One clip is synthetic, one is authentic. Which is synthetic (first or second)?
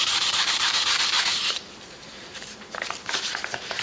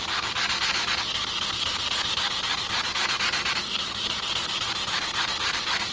first